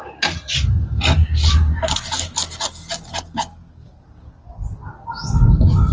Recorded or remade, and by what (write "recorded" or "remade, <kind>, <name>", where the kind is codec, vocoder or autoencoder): recorded